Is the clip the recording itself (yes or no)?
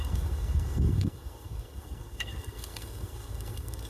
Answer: no